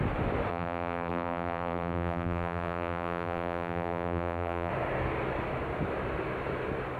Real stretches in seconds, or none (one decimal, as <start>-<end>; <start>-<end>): 0.0-0.5; 4.7-7.0